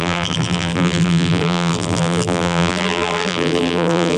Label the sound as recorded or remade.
remade